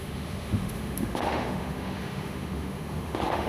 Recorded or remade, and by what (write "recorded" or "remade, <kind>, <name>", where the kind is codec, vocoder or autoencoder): remade, autoencoder, DAC-VAE